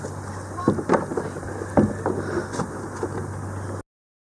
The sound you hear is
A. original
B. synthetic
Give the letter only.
A